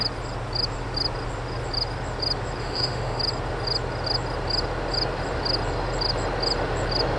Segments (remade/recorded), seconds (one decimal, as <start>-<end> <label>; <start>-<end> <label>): 0.0-2.6 recorded; 2.6-3.2 remade; 3.2-7.2 recorded